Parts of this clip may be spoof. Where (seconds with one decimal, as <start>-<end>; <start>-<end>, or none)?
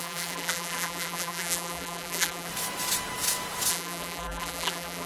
0.0-2.5; 3.7-5.1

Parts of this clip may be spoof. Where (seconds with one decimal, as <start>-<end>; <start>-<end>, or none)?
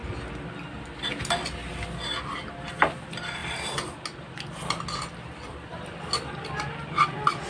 none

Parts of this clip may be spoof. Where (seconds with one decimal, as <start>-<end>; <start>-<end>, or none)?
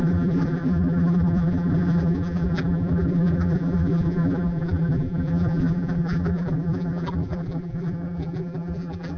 0.0-9.2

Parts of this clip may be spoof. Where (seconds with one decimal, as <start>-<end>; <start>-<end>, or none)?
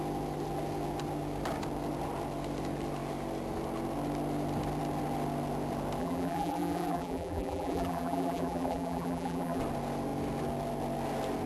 6.0-9.6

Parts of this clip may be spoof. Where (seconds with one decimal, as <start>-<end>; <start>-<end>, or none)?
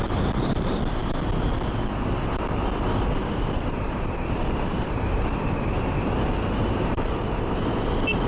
3.2-8.3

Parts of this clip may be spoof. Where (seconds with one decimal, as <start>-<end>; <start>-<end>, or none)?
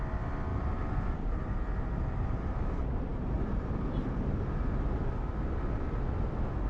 0.5-2.5; 3.1-5.0